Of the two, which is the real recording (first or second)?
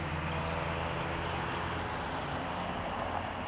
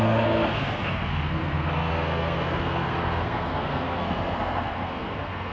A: first